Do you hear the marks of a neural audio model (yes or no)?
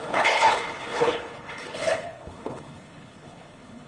yes